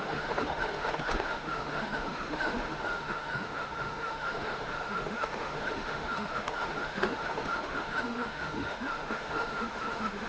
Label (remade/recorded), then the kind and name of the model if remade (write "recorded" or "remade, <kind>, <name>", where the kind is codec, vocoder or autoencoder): remade, autoencoder, DAC-VAE